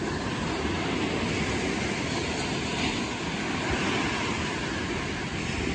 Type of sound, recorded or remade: recorded